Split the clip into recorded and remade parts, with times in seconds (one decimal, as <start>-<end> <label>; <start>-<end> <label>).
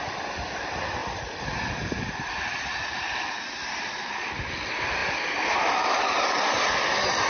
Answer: 0.0-1.0 recorded; 1.0-4.5 remade; 4.5-7.3 recorded